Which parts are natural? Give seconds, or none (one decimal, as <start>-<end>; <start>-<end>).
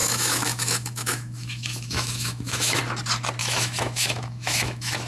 2.8-3.4